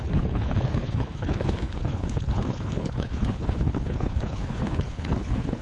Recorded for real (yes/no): no